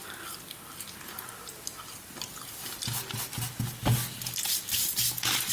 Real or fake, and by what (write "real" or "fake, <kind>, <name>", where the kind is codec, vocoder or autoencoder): real